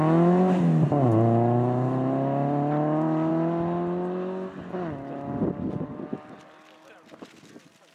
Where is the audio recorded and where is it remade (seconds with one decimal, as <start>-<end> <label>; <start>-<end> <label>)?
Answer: 0.0-7.9 recorded